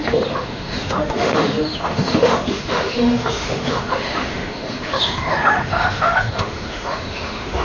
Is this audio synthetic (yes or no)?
yes